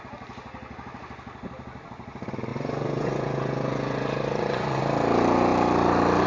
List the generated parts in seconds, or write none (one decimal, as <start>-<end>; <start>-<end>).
2.5-4.8